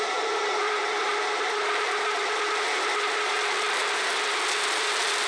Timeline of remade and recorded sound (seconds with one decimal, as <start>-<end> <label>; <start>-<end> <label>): 0.0-5.3 recorded